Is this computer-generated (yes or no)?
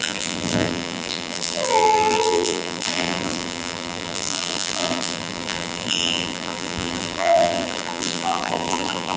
yes